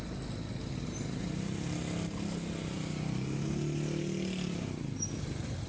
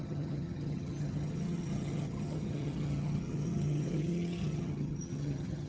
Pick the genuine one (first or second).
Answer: first